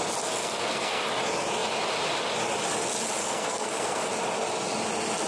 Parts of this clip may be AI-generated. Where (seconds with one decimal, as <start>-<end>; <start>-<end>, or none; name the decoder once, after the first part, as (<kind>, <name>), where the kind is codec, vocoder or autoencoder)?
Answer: 0.4-1.0 (codec, SNAC); 3.2-4.1